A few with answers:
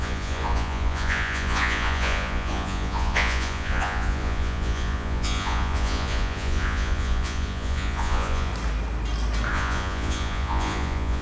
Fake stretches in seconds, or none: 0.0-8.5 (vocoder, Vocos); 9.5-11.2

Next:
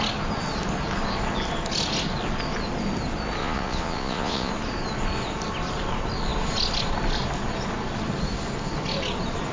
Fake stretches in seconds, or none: 3.4-4.5 (vocoder, Vocos)